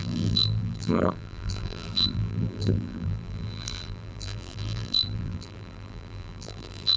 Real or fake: fake